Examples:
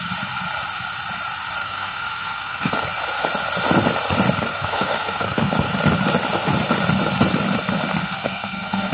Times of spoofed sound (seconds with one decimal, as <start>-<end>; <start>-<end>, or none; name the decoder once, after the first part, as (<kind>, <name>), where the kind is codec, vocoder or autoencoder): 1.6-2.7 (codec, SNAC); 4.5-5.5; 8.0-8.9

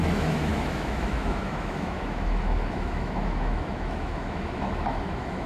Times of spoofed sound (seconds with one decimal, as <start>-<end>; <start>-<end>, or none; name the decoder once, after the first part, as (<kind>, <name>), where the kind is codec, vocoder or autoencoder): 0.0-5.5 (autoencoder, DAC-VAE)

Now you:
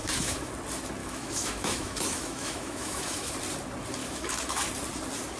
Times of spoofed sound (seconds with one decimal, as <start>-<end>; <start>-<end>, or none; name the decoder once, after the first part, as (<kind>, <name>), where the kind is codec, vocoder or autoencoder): 0.0-0.5 (autoencoder, DAC-VAE); 1.0-3.3; 4.0-4.7

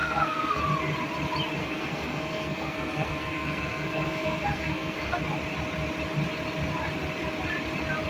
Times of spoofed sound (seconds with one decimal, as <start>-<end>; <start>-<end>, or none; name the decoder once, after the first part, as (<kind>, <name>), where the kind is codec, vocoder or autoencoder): 0.0-0.6 (codec, SNAC); 1.6-5.2

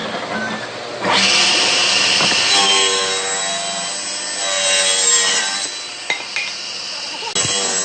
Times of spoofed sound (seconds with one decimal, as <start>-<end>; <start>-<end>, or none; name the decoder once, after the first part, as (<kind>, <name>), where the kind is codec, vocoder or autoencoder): none